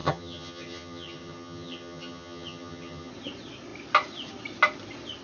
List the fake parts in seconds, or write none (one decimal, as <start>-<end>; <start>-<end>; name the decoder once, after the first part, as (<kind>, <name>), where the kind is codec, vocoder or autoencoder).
0.0-3.1 (vocoder, HiFi-GAN)